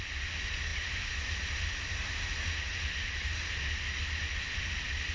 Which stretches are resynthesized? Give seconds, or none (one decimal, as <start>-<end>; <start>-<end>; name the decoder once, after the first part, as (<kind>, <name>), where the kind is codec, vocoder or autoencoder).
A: none